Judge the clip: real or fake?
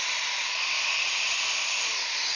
real